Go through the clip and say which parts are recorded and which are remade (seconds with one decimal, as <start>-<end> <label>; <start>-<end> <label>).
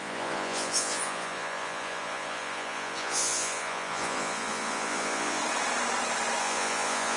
0.0-5.4 remade; 5.4-6.4 recorded; 6.4-7.2 remade